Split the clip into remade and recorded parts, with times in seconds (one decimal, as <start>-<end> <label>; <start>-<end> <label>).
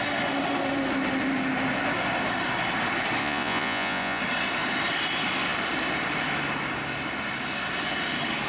0.0-3.2 recorded; 3.2-4.2 remade; 4.2-8.5 recorded